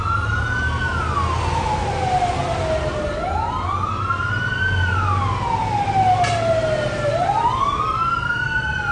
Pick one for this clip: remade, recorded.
recorded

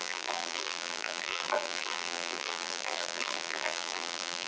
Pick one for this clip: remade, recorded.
remade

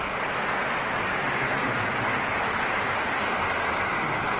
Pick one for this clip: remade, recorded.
recorded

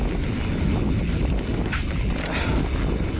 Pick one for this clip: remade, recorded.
recorded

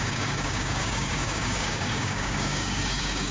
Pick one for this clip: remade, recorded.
remade